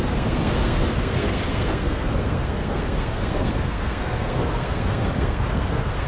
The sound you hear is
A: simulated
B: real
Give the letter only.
A